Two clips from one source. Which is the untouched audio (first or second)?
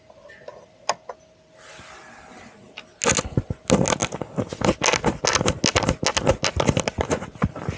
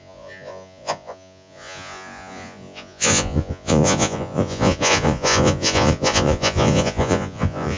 first